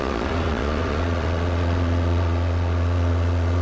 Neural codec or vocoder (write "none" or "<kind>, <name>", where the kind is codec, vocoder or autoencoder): vocoder, Vocos